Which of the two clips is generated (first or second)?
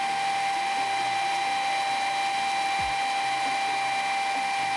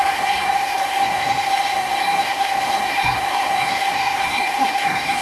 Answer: second